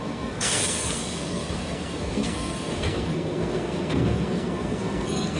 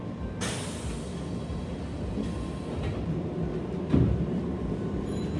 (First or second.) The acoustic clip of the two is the second